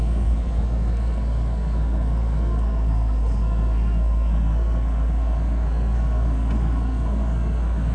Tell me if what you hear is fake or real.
fake